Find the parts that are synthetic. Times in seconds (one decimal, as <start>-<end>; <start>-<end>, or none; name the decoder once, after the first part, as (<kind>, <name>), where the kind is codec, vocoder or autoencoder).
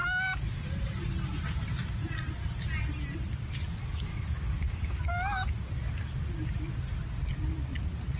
4.1-5.0 (codec, DAC)